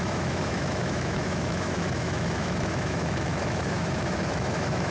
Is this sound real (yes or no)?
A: no